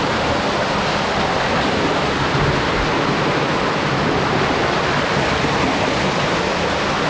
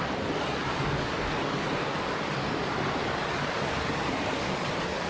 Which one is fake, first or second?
second